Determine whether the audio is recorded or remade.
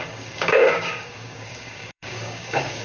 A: remade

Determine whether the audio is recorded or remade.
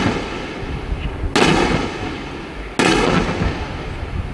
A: recorded